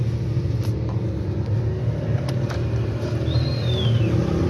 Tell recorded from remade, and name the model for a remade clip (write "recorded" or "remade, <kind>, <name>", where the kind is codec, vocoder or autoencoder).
recorded